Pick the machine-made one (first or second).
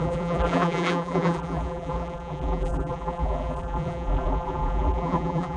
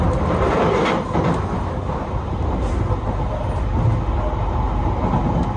first